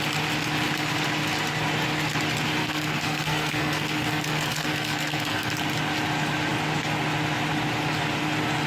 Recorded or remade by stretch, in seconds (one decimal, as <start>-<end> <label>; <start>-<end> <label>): 0.0-2.6 recorded; 2.6-5.5 remade; 5.5-8.7 recorded

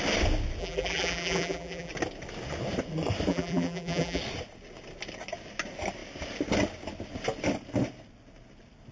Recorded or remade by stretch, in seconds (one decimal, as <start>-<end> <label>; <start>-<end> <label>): 0.0-0.6 recorded; 0.6-1.9 remade; 1.9-3.3 recorded; 3.3-4.2 remade; 4.2-8.9 recorded

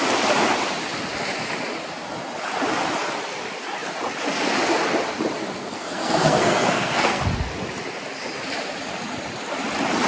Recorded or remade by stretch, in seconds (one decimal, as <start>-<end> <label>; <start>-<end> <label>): 0.0-5.6 recorded; 5.6-7.2 remade; 7.2-10.1 recorded

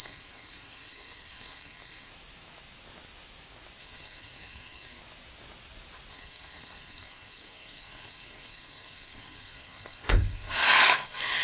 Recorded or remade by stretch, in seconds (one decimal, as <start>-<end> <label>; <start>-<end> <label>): 0.0-2.1 remade; 2.1-3.8 recorded; 3.8-5.0 remade; 5.0-6.1 recorded; 6.1-11.4 remade

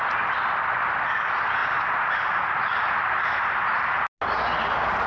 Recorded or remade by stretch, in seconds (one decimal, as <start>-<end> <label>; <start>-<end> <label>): 0.0-5.1 recorded